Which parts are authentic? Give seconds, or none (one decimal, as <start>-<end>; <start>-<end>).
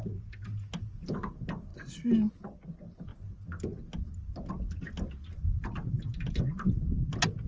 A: 0.0-7.5